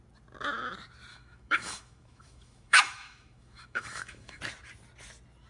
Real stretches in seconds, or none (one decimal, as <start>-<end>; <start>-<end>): 0.0-1.1; 4.4-5.5